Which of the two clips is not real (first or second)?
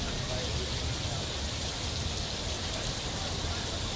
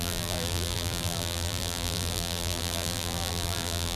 second